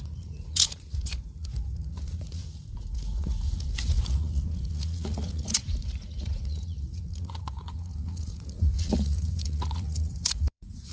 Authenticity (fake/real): fake